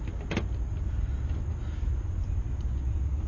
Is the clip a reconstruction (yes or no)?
no